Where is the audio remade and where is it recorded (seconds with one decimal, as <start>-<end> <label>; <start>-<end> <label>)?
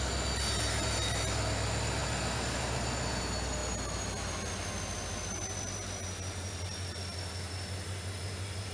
0.0-8.7 recorded